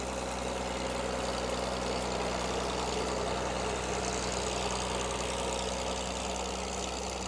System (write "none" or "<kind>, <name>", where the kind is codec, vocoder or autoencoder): none